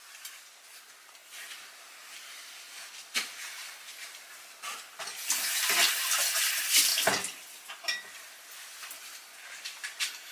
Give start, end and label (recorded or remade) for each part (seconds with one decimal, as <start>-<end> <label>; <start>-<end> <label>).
0.0-10.3 recorded